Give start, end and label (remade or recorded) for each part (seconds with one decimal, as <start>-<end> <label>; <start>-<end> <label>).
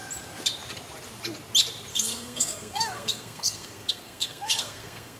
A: 0.0-1.9 recorded; 1.9-5.2 remade